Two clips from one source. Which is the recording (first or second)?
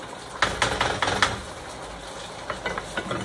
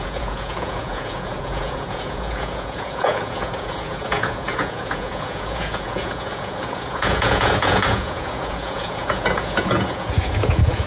first